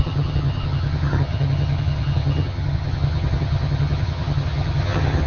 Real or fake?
fake